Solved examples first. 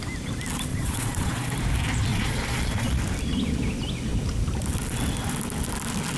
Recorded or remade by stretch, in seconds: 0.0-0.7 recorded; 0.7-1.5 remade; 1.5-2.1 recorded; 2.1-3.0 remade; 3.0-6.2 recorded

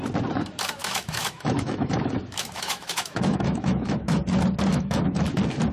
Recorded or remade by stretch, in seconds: 0.0-0.8 recorded; 0.8-4.2 remade; 4.2-4.7 recorded; 4.7-5.3 remade; 5.3-5.7 recorded

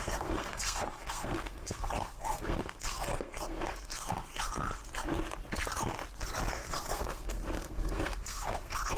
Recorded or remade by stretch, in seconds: 0.0-4.8 remade; 4.8-6.5 recorded; 6.5-9.0 remade

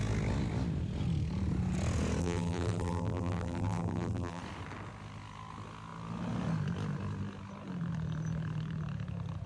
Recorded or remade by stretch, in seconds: 0.0-2.2 recorded; 2.2-4.4 remade; 4.4-9.5 recorded

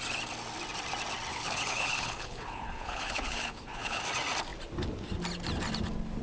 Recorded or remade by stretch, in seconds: 0.0-1.3 recorded; 1.3-4.0 remade; 4.0-6.2 recorded

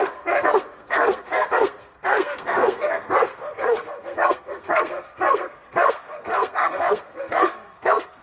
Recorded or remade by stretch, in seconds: 0.0-8.2 remade

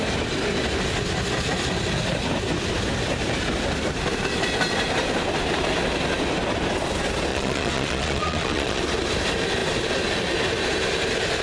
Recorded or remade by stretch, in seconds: 0.0-7.3 recorded; 7.3-8.8 remade; 8.8-11.4 recorded

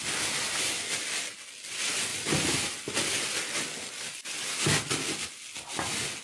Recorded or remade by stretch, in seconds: 0.0-6.2 recorded